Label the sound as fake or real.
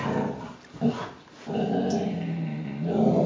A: real